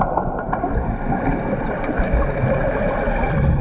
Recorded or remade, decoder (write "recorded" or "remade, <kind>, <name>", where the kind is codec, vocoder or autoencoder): recorded